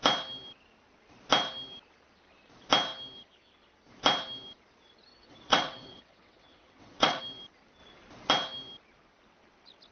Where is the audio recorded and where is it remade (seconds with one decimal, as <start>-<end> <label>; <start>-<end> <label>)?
0.0-5.1 recorded; 5.1-7.2 remade; 7.2-9.9 recorded